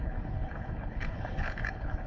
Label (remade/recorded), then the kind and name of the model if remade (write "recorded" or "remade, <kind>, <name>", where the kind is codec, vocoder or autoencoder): remade, codec, HILCodec